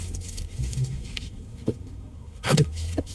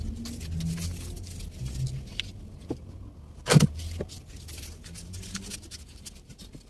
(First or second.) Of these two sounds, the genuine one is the second